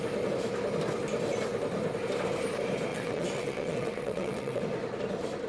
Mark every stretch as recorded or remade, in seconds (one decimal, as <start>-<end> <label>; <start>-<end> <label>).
0.0-2.9 recorded; 2.9-4.6 remade; 4.6-5.5 recorded